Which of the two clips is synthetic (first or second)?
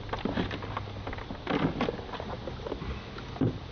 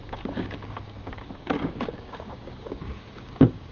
second